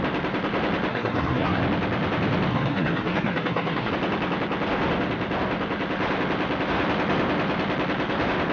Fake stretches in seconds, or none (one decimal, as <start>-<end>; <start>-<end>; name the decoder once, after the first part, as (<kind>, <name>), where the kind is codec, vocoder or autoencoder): 0.9-1.6 (codec, SNAC); 2.5-3.9